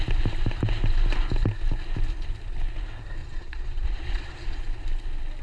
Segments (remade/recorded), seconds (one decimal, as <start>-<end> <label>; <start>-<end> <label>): 0.0-3.2 recorded; 3.2-4.6 remade; 4.6-5.4 recorded